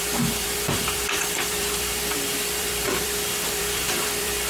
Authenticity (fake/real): fake